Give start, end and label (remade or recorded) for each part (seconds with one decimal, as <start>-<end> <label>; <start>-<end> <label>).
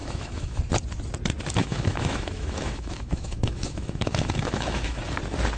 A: 0.0-0.6 remade; 0.6-1.6 recorded; 1.6-5.0 remade; 5.0-5.6 recorded